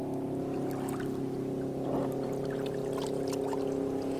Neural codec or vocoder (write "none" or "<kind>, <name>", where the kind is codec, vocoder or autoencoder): none